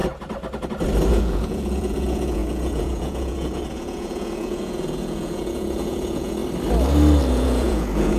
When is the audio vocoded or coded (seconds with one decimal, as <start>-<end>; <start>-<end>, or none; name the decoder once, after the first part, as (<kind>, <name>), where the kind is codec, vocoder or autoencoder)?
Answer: 1.1-6.4 (vocoder, Vocos); 7.3-8.2